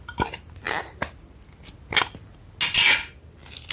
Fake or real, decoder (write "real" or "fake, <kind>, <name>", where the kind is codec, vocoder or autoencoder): real